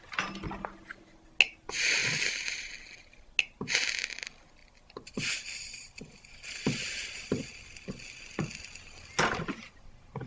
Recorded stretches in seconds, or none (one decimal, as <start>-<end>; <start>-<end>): 0.0-2.0; 2.7-10.3